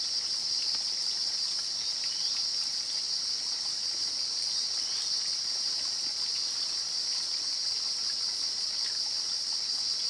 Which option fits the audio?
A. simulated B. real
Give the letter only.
B